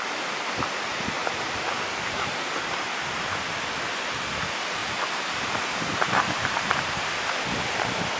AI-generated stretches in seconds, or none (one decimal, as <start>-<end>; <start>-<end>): 1.2-2.4; 4.8-7.0